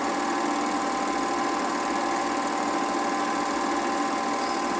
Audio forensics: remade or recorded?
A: recorded